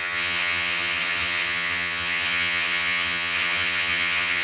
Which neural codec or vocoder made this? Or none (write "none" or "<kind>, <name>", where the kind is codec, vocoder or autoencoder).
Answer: vocoder, HiFi-GAN